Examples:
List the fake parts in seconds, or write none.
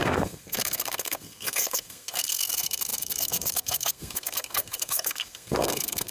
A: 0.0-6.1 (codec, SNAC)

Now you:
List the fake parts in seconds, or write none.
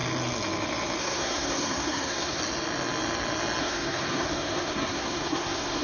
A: 1.0-2.4 (codec, SNAC); 3.6-5.8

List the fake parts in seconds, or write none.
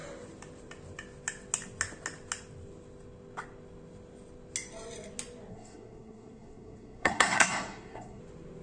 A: 5.5-8.2 (codec, SNAC)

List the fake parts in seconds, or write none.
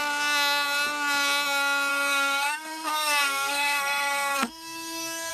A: 1.9-5.3 (codec, SNAC)